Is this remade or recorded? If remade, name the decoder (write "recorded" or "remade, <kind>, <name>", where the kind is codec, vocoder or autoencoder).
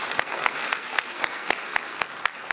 remade, codec, SNAC